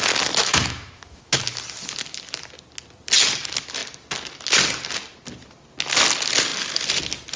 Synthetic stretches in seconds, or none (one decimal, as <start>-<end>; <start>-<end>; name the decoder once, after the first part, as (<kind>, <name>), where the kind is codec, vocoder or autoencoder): 0.4-1.4 (autoencoder, DAC-VAE)